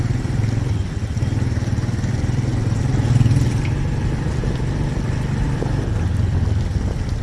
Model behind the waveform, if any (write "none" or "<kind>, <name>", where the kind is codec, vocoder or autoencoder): none